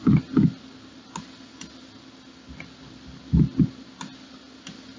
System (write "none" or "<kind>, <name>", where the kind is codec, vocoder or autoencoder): none